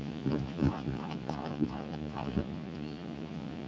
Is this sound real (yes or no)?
no